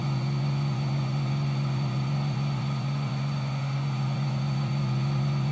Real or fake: fake